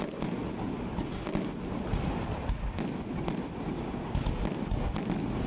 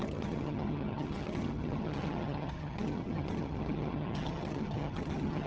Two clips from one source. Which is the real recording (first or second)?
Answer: first